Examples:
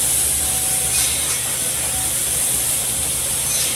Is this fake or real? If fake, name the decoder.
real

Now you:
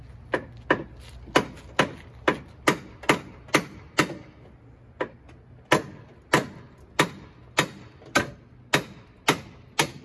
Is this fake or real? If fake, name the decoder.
real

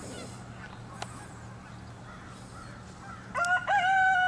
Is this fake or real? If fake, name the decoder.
real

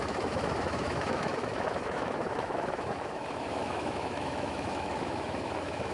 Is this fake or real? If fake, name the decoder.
fake, autoencoder, DAC-VAE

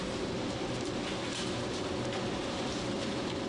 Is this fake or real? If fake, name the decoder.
fake, vocoder, BigVGAN v2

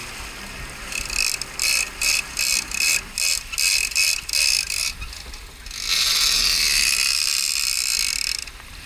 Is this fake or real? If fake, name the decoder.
real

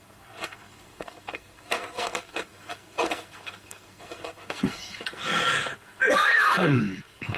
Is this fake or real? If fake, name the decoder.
fake, codec, SNAC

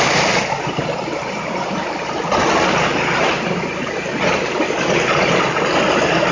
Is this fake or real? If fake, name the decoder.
real